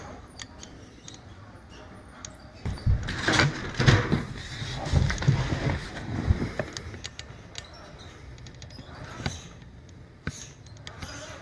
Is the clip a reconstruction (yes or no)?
no